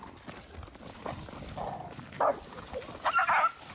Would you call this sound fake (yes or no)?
no